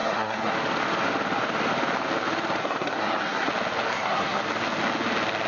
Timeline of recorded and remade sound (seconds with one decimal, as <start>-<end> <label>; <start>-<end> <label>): 0.0-0.5 remade; 0.5-2.6 recorded; 2.6-3.5 remade; 3.5-3.9 recorded; 3.9-4.4 remade; 4.4-5.5 recorded

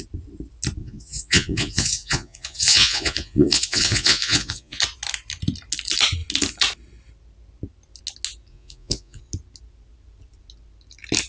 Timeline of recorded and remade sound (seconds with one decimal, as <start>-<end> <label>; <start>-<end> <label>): 0.0-0.8 recorded; 0.8-4.8 remade; 4.8-8.5 recorded; 8.5-9.2 remade; 9.2-11.3 recorded

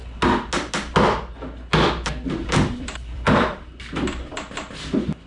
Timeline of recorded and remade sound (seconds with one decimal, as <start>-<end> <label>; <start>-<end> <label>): 0.0-2.4 recorded; 2.4-4.7 remade; 4.7-5.3 recorded

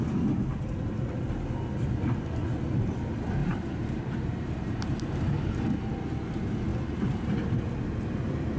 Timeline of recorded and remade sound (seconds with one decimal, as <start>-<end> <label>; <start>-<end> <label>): 0.0-3.4 recorded; 3.4-5.6 remade; 5.6-6.7 recorded; 6.7-7.6 remade; 7.6-8.6 recorded

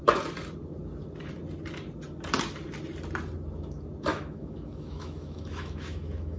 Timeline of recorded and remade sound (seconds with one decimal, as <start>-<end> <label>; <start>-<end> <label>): 0.0-4.1 recorded; 4.1-6.4 remade

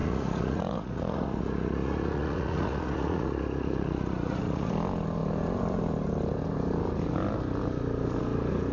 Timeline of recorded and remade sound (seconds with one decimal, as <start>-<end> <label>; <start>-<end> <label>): 0.0-4.7 remade; 4.7-8.7 recorded